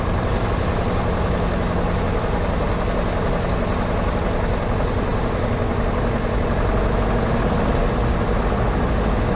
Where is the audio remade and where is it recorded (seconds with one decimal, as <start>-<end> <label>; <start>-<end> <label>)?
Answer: 0.0-9.4 recorded